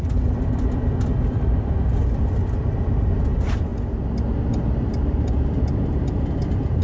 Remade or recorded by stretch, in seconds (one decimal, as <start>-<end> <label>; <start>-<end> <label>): 0.0-0.8 remade; 0.8-2.0 recorded; 2.0-3.7 remade; 3.7-6.3 recorded; 6.3-6.8 remade